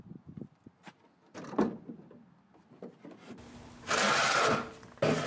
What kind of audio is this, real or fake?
real